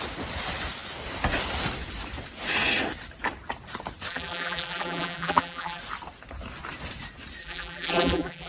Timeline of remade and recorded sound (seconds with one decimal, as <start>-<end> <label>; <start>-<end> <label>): 0.0-4.1 recorded; 4.1-5.8 remade; 5.8-7.4 recorded; 7.4-8.5 remade